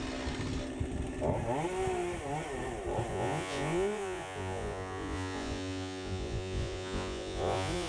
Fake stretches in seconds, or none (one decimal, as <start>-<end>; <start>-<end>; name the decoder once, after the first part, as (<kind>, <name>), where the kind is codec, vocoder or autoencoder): 3.1-7.9 (vocoder, Vocos)